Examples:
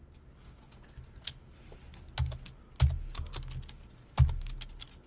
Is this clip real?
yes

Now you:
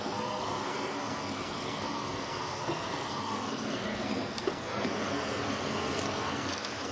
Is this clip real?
no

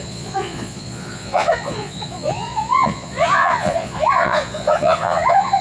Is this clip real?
no